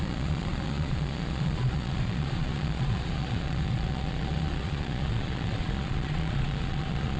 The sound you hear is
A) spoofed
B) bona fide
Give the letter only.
A